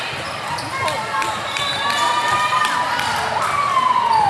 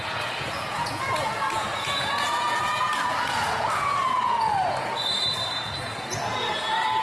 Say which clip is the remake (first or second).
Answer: second